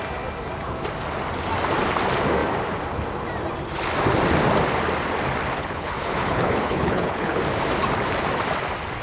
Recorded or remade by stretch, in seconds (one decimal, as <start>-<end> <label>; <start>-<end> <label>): 0.0-5.6 recorded; 5.6-7.4 remade; 7.4-9.0 recorded